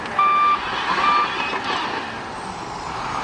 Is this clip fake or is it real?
real